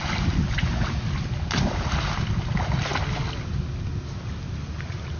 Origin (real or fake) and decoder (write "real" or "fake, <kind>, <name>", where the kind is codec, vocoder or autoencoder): real